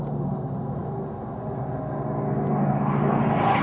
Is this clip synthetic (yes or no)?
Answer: no